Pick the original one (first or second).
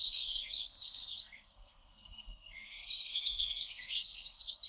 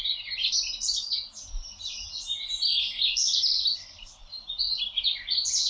second